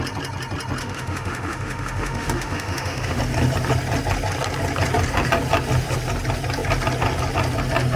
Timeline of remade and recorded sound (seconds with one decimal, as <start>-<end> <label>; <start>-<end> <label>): 0.0-0.8 recorded; 0.8-3.2 remade; 3.2-8.0 recorded